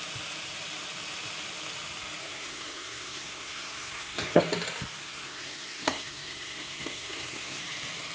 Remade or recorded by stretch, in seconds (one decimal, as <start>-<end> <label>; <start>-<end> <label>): 0.0-2.2 recorded; 2.2-4.4 remade; 4.4-5.0 recorded; 5.0-7.6 remade; 7.6-8.1 recorded